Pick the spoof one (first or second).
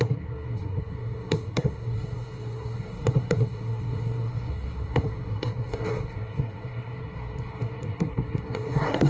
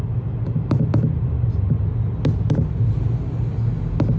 first